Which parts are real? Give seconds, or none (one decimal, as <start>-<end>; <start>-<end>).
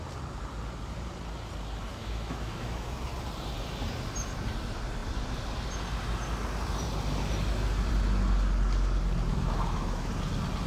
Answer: 0.0-1.9; 3.0-9.3; 10.1-10.7